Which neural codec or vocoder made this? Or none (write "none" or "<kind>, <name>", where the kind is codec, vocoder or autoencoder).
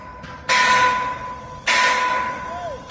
none